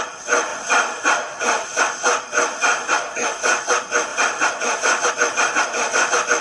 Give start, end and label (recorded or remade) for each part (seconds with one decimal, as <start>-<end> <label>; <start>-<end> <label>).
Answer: 0.0-4.1 recorded; 4.1-5.1 remade; 5.1-6.4 recorded